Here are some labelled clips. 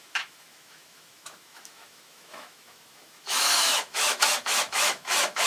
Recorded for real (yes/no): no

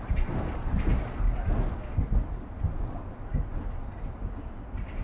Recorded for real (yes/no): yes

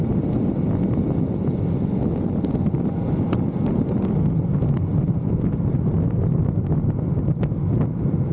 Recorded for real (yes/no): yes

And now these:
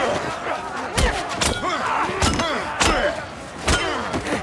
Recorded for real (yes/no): yes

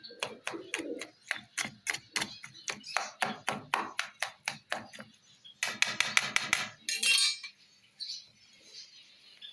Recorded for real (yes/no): yes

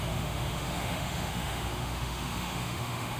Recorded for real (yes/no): no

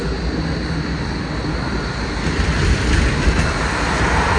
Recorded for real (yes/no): yes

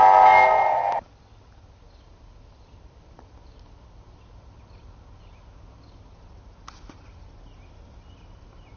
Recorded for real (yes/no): yes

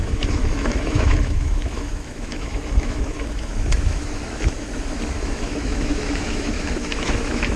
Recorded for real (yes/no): no